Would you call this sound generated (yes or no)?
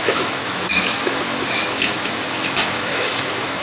yes